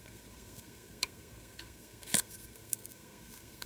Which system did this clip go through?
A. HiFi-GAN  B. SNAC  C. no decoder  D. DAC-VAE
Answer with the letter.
B